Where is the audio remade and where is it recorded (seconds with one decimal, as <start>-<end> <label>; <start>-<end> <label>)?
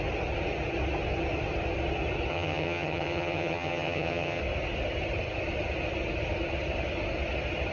0.0-2.3 recorded; 2.3-4.4 remade; 4.4-7.7 recorded